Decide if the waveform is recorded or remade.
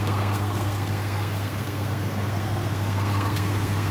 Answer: remade